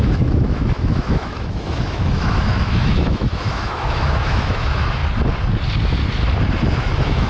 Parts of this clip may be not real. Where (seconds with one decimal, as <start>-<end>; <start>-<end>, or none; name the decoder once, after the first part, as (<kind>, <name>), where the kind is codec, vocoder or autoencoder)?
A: 0.0-5.0 (autoencoder, DAC-VAE); 6.8-7.3